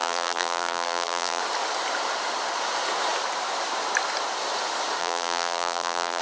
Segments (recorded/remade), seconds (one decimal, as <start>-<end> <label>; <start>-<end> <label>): 0.0-1.4 remade; 1.4-5.0 recorded; 5.0-6.2 remade